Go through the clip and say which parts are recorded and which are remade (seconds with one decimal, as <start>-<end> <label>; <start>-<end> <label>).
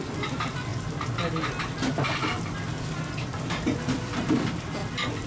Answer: 0.0-0.7 remade; 0.7-3.9 recorded; 3.9-4.8 remade; 4.8-5.3 recorded